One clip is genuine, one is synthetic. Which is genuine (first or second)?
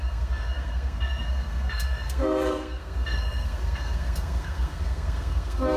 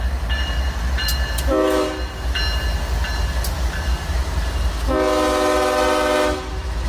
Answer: second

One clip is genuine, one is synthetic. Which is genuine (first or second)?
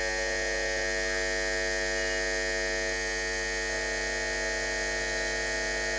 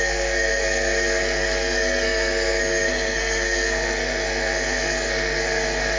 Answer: first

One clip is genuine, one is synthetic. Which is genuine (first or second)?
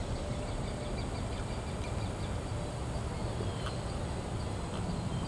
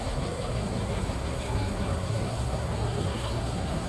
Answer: first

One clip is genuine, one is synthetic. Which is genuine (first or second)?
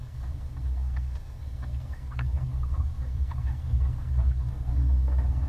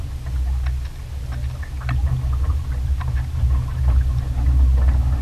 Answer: second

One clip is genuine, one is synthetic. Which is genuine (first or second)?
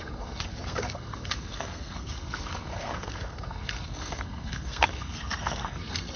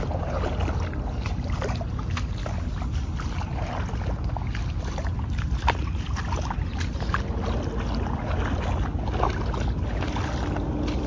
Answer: second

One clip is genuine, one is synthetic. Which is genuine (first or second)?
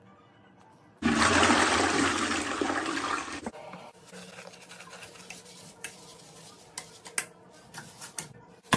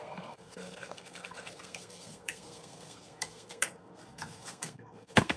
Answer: first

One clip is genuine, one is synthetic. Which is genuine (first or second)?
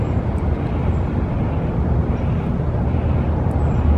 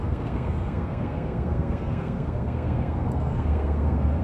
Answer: first